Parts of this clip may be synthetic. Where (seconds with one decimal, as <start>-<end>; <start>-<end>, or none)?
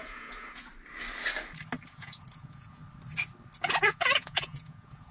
0.0-0.7; 1.9-2.8; 3.8-5.1